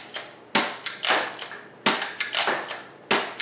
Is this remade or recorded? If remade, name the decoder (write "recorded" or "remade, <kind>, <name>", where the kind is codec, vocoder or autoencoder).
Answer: recorded